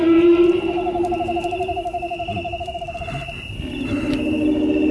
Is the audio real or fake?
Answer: real